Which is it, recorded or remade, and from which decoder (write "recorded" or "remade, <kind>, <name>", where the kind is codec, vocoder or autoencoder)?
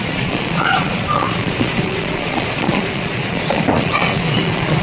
remade, vocoder, Vocos